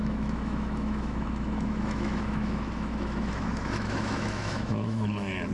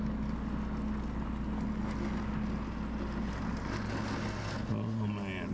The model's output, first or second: first